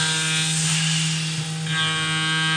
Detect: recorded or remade recorded